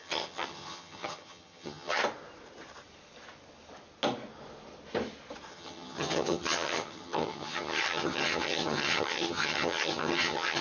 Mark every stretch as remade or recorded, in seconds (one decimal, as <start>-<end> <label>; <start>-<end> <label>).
0.0-2.0 remade; 2.0-5.5 recorded; 5.5-10.6 remade